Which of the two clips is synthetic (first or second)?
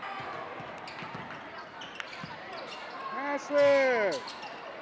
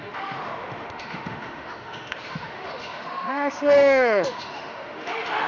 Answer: second